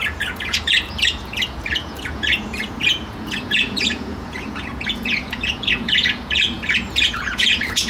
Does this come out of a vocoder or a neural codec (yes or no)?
yes